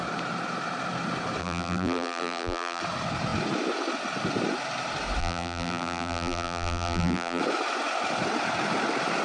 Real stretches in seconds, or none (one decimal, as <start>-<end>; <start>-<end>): 0.0-1.4; 2.8-5.2; 7.4-9.2